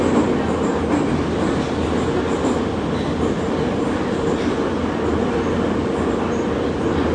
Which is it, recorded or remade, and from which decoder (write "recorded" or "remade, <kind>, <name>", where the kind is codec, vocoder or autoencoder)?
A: recorded